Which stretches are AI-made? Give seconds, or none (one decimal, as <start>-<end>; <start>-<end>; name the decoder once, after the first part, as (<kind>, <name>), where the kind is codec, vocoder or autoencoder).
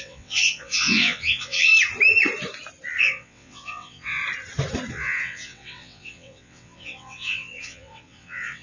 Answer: 0.0-1.7 (vocoder, WaveNeXt); 3.0-4.2; 4.9-8.6